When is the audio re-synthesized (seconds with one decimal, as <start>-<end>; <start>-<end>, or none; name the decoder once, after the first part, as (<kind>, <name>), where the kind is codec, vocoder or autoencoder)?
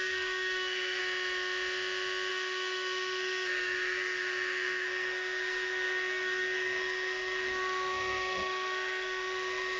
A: 0.0-1.0 (codec, SNAC); 2.3-9.8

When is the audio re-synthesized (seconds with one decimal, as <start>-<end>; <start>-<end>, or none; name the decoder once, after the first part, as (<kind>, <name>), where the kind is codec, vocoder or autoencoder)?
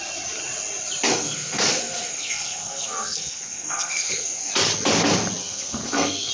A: 1.1-4.5 (codec, SNAC); 5.4-6.3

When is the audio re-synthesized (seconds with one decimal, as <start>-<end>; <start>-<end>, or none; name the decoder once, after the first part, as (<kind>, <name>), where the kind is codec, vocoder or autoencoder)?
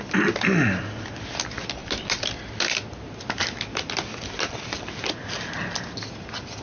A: none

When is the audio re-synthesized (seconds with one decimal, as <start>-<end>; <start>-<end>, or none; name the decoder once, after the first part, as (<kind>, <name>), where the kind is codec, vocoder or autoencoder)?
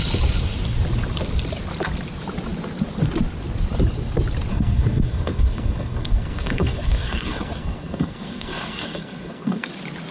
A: 4.5-9.7 (codec, SNAC)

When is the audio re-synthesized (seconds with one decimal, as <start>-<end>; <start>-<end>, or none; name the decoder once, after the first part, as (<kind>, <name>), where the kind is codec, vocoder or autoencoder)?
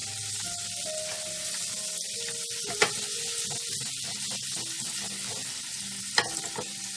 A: none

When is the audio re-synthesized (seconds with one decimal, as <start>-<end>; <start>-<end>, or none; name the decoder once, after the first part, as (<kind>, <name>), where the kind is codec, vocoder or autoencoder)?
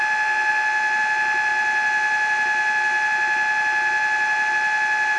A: none